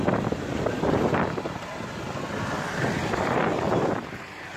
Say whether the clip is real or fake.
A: real